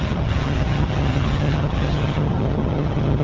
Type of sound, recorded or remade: remade